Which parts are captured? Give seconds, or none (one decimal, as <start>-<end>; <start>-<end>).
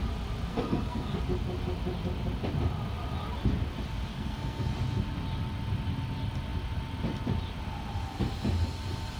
0.0-0.5; 1.2-4.1; 4.7-9.2